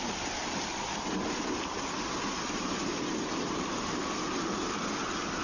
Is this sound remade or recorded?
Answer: recorded